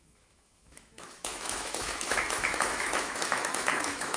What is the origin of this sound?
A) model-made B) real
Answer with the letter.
A